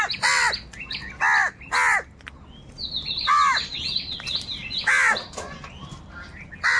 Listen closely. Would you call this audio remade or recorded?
recorded